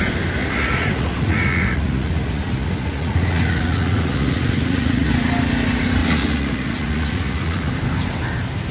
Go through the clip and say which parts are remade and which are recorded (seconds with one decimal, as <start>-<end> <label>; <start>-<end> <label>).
0.0-0.4 recorded; 0.4-5.1 remade; 5.1-6.0 recorded; 6.0-7.7 remade; 7.7-8.7 recorded

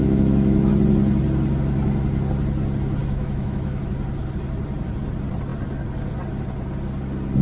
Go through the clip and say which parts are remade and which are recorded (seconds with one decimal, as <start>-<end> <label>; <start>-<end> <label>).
0.0-0.7 remade; 0.7-3.0 recorded; 3.0-3.8 remade; 3.8-7.4 recorded